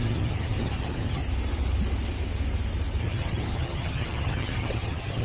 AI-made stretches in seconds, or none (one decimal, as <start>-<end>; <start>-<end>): 0.0-1.2; 3.0-5.2

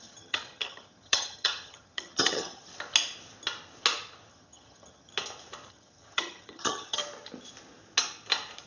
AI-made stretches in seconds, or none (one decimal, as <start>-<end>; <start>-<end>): 0.0-2.7; 4.3-5.1; 5.7-7.0